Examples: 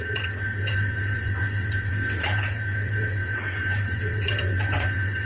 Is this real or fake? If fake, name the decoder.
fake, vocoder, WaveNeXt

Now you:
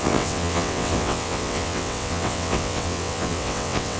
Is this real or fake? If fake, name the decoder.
fake, vocoder, WaveNeXt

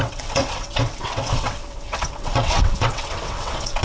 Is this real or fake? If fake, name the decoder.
fake, vocoder, WaveNeXt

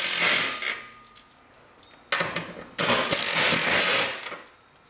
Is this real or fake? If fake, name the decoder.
real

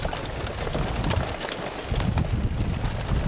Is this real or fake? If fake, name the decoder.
real